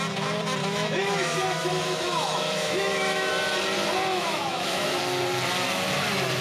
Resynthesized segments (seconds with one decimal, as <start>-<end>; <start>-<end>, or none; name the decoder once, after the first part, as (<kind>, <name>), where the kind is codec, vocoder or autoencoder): 0.6-3.3 (autoencoder, DAC-VAE); 4.1-5.0